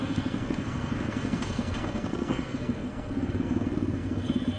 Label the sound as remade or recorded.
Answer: remade